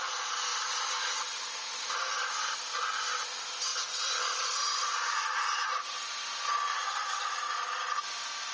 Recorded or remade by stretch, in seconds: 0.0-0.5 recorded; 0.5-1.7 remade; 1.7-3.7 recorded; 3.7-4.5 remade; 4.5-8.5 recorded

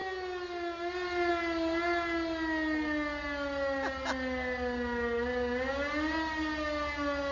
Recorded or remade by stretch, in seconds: 0.0-7.3 recorded

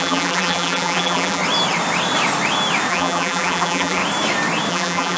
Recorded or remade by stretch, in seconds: 0.0-1.4 remade; 1.4-2.9 recorded; 2.9-4.0 remade; 4.0-4.7 recorded; 4.7-5.2 remade

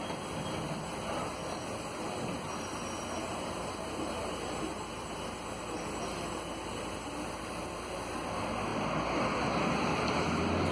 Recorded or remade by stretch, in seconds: 0.0-10.7 recorded